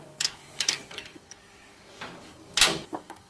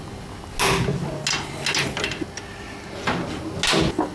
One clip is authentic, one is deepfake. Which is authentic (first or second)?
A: second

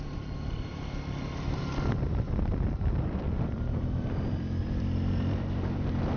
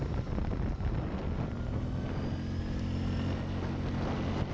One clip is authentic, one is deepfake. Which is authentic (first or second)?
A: second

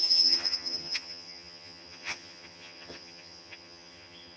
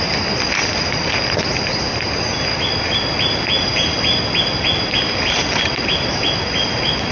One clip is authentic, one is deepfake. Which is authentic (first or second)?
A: second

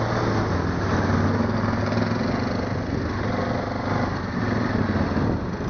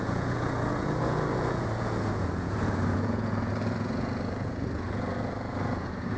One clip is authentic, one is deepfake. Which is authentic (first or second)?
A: first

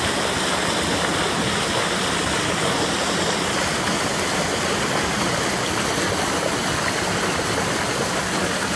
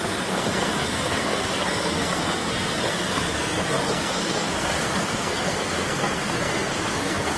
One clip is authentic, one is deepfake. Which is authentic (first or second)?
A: first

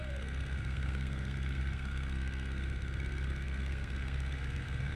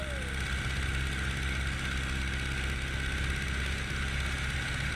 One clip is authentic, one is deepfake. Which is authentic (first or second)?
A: second